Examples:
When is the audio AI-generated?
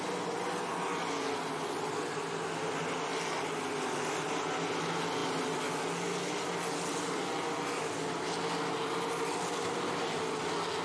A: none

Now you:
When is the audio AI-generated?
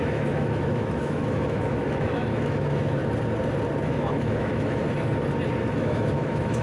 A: 0.0-3.0 (autoencoder, DAC-VAE); 3.8-4.8; 5.7-6.6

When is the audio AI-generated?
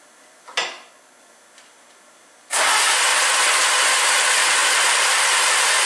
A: 0.0-0.6 (vocoder, BigVGAN v2); 1.2-3.1; 3.8-5.9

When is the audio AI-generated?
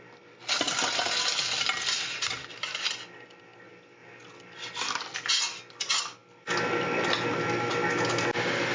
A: none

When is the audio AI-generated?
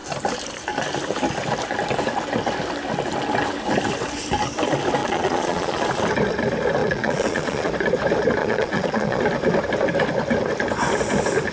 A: 5.0-5.8 (vocoder, Vocos); 6.8-7.7; 8.4-9.2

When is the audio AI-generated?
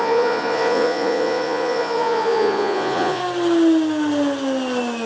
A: 0.0-3.2 (vocoder, Vocos)